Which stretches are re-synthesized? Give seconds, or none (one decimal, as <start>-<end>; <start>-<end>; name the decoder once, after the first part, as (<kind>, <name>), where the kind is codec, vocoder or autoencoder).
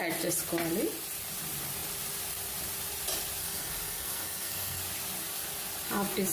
3.4-4.8 (codec, SNAC)